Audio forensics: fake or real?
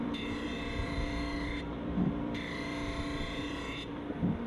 fake